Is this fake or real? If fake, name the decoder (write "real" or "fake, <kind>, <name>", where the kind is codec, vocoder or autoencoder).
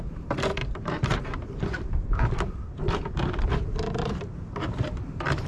fake, vocoder, BigVGAN v2